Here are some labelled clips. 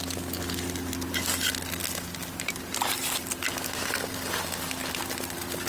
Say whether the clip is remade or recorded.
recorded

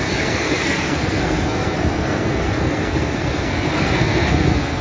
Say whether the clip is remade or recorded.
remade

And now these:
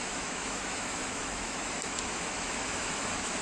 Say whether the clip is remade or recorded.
remade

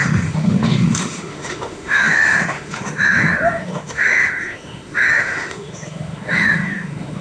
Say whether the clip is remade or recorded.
remade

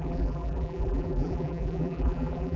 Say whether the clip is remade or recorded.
remade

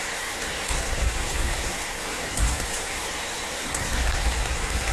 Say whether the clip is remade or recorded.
remade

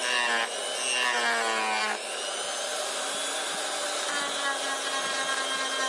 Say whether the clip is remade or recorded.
recorded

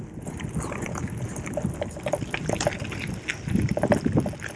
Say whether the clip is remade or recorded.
recorded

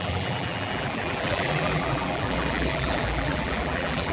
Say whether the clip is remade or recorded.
remade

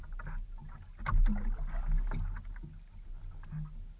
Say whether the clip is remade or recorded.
recorded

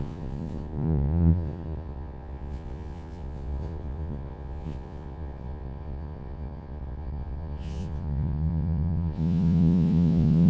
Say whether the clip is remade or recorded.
remade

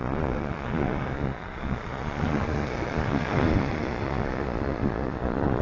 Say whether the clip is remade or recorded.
remade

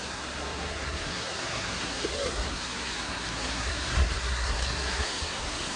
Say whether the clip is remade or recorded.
remade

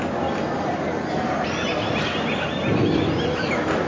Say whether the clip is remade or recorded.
recorded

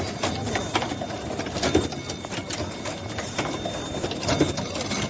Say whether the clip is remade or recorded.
recorded